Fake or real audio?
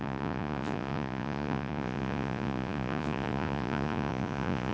fake